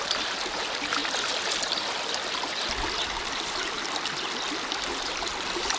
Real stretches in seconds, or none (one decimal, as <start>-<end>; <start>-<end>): 0.0-5.8